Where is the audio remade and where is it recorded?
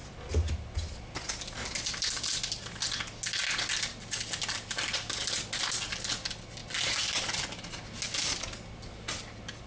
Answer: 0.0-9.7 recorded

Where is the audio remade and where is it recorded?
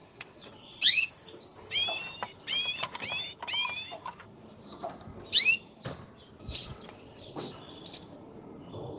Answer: 0.0-1.1 remade; 1.1-6.5 recorded; 6.5-7.6 remade; 7.6-9.0 recorded